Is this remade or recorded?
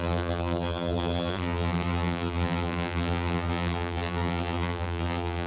remade